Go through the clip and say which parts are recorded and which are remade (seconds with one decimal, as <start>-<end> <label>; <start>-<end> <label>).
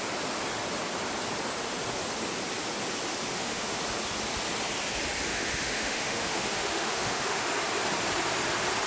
0.0-3.3 recorded; 3.3-3.8 remade; 3.8-5.3 recorded; 5.3-7.5 remade; 7.5-8.9 recorded